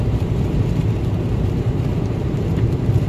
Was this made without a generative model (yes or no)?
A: no